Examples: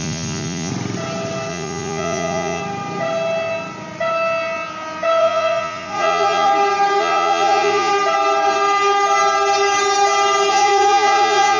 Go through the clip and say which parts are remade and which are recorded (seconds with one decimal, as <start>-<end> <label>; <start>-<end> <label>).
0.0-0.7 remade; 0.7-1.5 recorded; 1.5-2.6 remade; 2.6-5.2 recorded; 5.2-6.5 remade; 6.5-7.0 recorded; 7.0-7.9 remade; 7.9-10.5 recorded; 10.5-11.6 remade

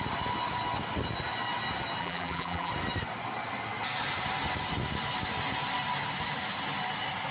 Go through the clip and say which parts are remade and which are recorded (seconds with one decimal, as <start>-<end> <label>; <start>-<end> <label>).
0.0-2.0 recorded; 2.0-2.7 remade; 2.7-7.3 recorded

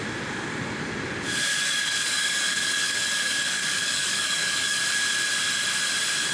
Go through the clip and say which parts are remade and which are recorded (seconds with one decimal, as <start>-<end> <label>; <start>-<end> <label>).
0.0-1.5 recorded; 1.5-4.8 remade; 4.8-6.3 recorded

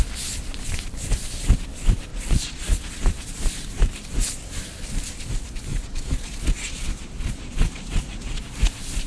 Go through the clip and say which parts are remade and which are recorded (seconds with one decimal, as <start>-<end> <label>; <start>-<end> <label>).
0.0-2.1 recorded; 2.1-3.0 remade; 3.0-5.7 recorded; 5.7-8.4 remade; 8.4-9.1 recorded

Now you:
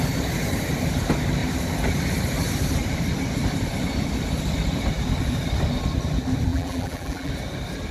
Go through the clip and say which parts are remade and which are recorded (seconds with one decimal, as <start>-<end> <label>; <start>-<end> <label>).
0.0-6.5 recorded; 6.5-7.3 remade; 7.3-7.9 recorded